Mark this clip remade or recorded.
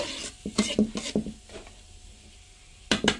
recorded